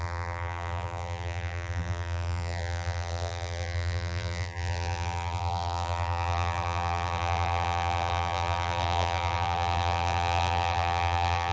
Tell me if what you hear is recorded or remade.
remade